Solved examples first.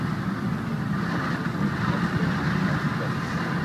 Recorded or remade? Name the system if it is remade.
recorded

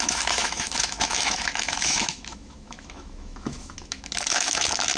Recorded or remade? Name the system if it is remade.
remade, autoencoder, DAC-VAE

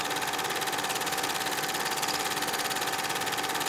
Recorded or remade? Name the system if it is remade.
recorded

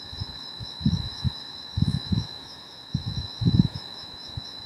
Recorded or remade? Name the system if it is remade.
remade, autoencoder, DAC-VAE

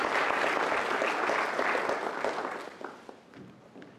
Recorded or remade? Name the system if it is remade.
recorded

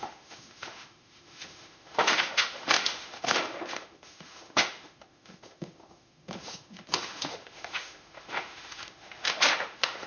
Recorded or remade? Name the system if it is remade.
remade, autoencoder, DAC-VAE